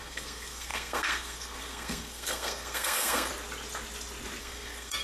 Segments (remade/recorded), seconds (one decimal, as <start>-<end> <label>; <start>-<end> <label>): 0.0-3.3 remade; 3.3-4.4 recorded; 4.4-5.0 remade